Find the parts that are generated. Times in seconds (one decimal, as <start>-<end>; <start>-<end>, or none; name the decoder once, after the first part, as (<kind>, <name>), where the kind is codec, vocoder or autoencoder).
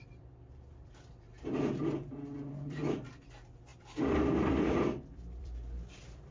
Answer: 0.0-6.3 (vocoder, BigVGAN v2)